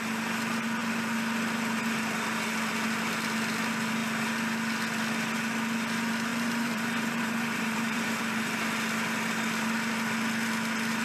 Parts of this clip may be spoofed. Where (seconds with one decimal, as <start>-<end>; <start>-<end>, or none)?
6.3-8.2